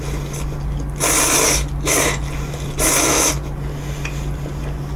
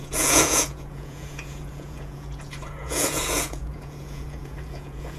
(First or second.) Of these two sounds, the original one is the first